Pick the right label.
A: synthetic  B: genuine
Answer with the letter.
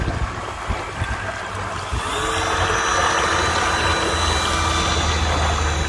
B